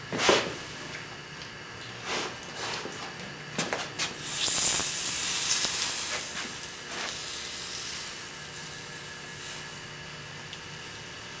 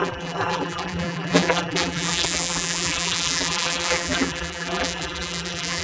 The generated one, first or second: second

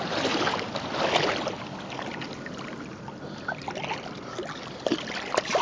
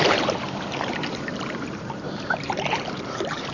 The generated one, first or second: second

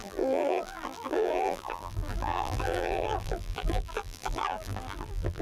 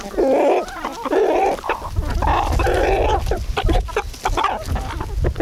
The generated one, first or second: first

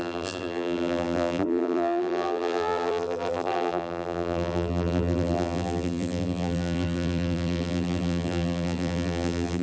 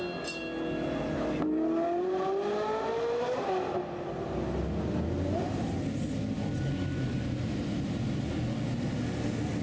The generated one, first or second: first